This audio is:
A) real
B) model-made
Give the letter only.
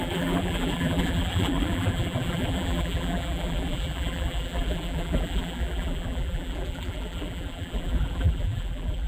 B